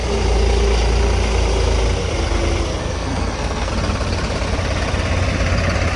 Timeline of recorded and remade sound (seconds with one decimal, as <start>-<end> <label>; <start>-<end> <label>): 0.0-2.8 recorded; 2.8-3.7 remade; 3.7-6.0 recorded